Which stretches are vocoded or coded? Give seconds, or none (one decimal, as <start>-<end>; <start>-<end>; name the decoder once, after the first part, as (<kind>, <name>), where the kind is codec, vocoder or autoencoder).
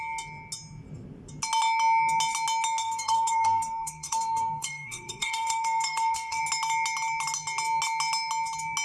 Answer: 2.8-6.4 (codec, SNAC)